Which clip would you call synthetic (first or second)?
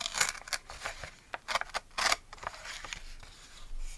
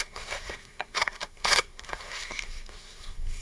second